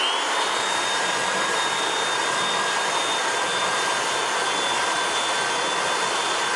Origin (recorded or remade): recorded